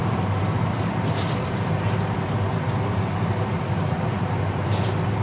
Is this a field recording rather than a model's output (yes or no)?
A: no